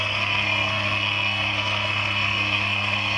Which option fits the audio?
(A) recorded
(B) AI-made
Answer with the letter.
B